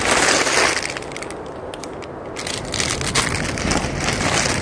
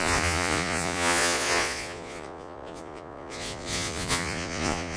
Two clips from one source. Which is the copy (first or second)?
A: second